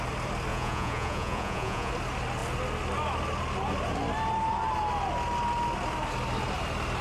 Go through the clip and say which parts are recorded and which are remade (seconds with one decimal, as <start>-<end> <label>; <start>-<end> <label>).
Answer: 0.0-0.5 recorded; 0.5-1.9 remade; 1.9-7.0 recorded